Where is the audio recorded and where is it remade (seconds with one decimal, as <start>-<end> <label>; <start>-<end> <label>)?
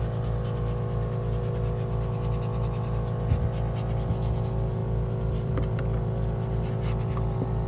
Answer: 0.0-4.8 recorded; 4.8-5.5 remade; 5.5-7.7 recorded